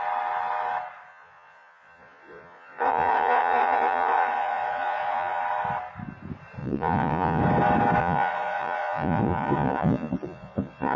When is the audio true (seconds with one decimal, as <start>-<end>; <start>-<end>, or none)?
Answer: 0.0-1.1; 5.4-6.6; 7.4-8.0